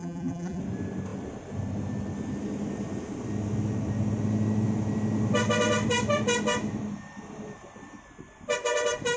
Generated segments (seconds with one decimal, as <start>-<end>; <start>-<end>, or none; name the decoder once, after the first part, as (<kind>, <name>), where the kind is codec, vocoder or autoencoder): 0.0-0.6 (vocoder, BigVGAN v2)